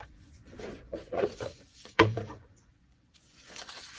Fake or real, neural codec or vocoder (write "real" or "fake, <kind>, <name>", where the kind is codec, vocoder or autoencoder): fake, vocoder, Vocos